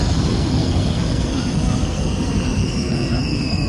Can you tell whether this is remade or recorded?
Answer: remade